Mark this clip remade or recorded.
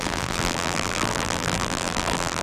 remade